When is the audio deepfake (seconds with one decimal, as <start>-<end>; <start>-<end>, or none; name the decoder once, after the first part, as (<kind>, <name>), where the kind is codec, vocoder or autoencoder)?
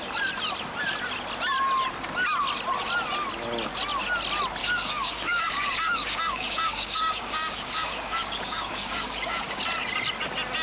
4.6-9.6 (codec, DAC)